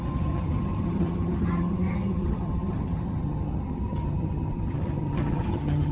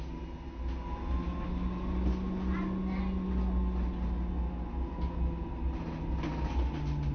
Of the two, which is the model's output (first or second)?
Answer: first